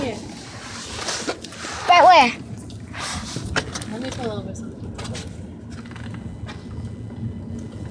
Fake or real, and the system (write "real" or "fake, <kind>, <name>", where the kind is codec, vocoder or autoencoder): real